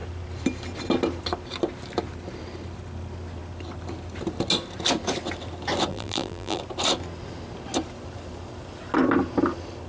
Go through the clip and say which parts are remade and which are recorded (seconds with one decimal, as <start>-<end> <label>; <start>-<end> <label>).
0.0-5.9 recorded; 5.9-6.6 remade; 6.6-9.9 recorded